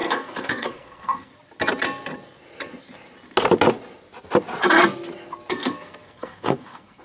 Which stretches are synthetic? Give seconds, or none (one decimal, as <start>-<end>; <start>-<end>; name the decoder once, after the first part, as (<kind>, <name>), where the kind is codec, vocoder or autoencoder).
0.0-1.3 (codec, SNAC); 5.5-7.0